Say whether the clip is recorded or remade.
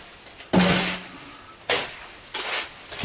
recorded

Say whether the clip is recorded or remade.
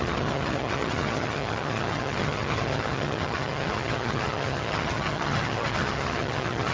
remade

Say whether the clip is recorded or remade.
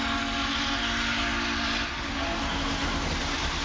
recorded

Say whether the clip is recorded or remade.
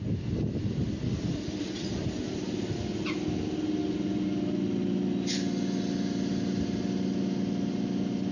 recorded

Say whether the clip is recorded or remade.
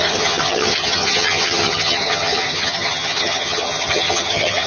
remade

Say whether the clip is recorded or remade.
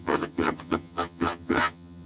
remade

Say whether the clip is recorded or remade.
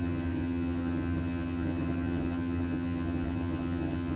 remade